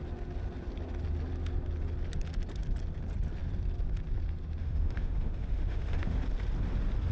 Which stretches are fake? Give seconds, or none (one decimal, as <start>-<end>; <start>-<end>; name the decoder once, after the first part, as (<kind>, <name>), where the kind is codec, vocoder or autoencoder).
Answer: 4.6-6.2 (autoencoder, DAC-VAE)

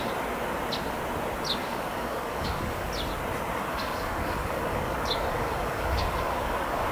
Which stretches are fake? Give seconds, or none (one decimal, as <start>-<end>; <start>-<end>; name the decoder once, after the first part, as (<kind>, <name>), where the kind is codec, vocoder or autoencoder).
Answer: 1.6-2.9 (codec, DAC); 3.7-6.9

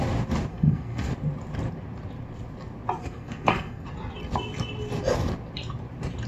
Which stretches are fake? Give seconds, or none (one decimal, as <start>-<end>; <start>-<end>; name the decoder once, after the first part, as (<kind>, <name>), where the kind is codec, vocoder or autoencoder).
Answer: 0.5-1.1 (codec, SNAC); 3.0-3.9

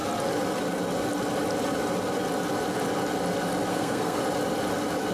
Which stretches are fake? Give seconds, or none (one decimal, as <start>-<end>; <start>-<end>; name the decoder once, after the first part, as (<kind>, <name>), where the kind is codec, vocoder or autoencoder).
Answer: 3.7-4.2 (codec, SNAC)

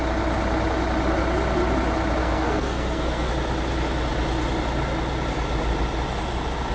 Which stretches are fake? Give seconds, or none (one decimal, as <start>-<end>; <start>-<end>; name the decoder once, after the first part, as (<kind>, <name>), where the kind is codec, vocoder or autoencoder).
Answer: 2.2-3.3 (codec, SNAC)

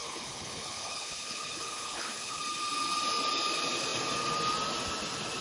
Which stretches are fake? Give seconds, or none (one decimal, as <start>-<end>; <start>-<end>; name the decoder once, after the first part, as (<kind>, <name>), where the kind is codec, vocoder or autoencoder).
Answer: 0.0-2.4 (codec, HILCodec)

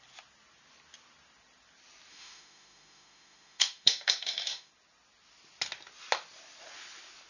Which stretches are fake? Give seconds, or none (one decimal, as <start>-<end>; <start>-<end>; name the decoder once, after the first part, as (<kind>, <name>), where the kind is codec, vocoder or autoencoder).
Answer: 2.1-4.7 (autoencoder, DAC-VAE)

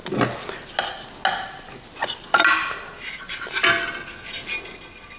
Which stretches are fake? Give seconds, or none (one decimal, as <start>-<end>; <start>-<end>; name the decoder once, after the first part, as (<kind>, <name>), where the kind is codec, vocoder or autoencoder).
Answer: none